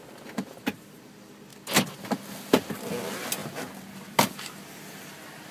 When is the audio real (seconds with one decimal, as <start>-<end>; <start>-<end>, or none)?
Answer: 0.0-5.5

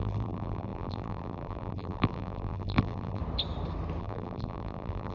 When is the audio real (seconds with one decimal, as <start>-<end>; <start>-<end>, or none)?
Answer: 3.2-4.0